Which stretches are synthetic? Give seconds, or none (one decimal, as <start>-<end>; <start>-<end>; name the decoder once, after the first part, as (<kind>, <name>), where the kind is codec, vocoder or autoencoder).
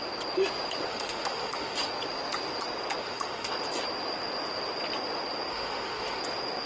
0.9-1.9 (autoencoder, DAC-VAE); 3.0-3.5; 5.5-6.2